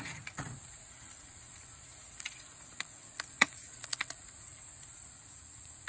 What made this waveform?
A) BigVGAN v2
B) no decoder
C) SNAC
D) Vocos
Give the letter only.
D